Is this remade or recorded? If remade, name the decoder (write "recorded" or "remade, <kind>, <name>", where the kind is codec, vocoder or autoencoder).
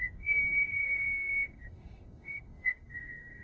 remade, codec, DAC